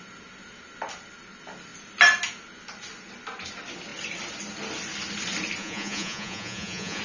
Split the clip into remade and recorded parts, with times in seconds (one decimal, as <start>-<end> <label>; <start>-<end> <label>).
0.0-5.6 recorded; 5.6-7.0 remade